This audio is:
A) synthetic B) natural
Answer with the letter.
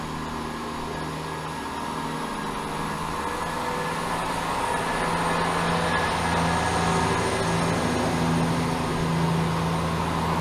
B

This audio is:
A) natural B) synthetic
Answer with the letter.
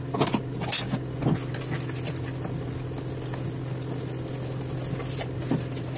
A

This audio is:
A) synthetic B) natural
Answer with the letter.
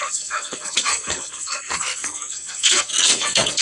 A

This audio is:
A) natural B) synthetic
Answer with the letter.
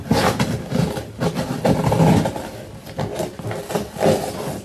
A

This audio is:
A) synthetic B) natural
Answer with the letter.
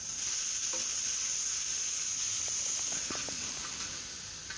B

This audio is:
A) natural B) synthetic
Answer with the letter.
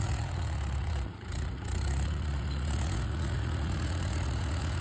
B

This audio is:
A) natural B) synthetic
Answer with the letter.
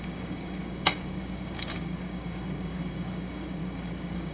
B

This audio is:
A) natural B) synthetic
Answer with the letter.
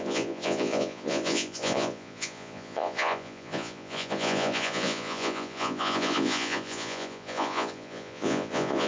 B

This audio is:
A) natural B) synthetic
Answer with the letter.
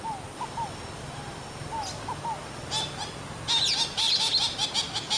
A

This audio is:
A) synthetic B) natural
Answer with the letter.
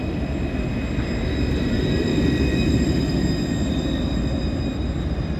B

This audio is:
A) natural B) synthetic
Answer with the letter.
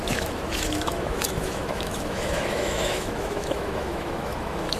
B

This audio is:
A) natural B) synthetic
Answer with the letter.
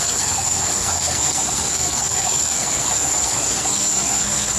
B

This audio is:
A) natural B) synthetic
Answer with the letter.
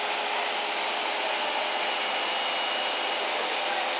A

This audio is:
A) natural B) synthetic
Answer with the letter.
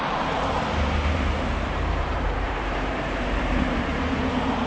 B